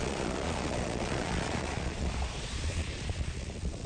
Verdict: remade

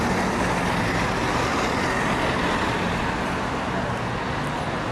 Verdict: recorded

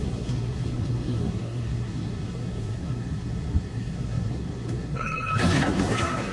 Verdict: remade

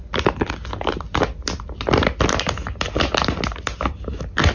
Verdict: recorded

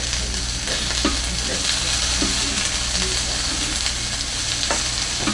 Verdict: recorded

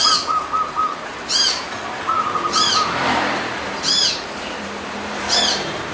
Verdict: remade